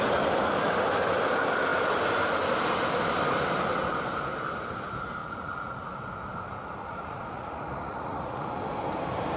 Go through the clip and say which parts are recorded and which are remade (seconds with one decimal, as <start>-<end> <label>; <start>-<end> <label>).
0.0-5.2 recorded; 5.2-5.8 remade; 5.8-6.8 recorded; 6.8-8.5 remade; 8.5-9.4 recorded